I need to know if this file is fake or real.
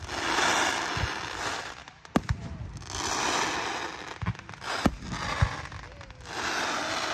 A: real